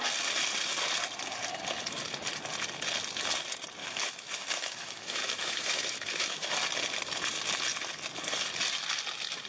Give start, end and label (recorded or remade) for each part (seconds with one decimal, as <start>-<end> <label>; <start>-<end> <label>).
0.0-3.8 recorded; 3.8-6.5 remade; 6.5-9.5 recorded

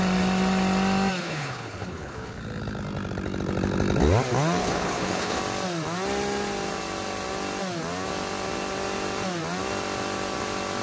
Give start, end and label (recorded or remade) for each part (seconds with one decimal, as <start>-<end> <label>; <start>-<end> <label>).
0.0-1.2 recorded; 1.2-2.4 remade; 2.4-4.6 recorded; 4.6-5.4 remade; 5.4-10.8 recorded

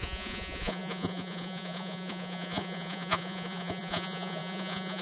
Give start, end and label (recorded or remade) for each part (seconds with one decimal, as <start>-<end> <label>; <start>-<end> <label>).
0.0-5.0 remade

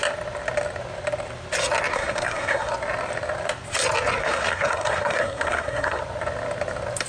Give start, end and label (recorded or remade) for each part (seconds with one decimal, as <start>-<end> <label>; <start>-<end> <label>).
0.0-1.9 recorded; 1.9-2.7 remade; 2.7-4.2 recorded; 4.2-6.0 remade; 6.0-7.1 recorded

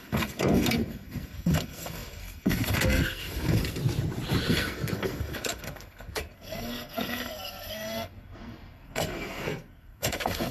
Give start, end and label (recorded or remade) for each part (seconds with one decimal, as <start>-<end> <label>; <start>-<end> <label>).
0.0-3.8 remade; 3.8-4.5 recorded; 4.5-10.5 remade